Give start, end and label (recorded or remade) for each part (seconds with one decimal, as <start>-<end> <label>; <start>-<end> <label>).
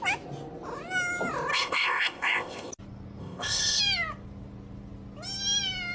0.0-1.5 recorded; 1.5-2.7 remade; 2.7-3.2 recorded; 3.2-3.8 remade; 3.8-5.9 recorded